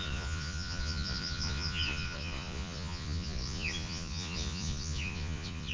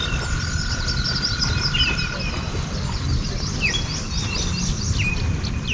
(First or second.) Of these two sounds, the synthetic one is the first